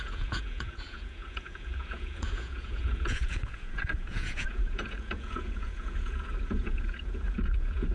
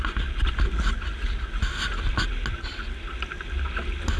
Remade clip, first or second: first